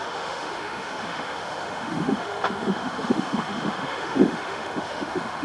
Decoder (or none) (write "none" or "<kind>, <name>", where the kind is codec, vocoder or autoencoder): autoencoder, DAC-VAE